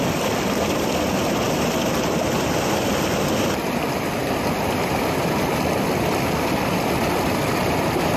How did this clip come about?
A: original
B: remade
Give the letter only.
A